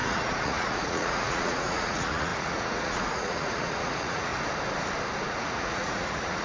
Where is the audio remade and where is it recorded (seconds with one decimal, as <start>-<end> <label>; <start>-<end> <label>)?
0.0-4.3 remade; 4.3-5.3 recorded; 5.3-6.4 remade

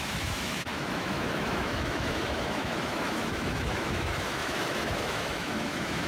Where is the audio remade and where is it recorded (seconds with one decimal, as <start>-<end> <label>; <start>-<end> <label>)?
0.0-6.1 remade